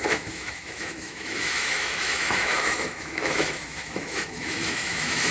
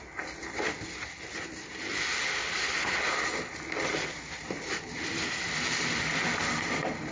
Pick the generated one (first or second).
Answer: first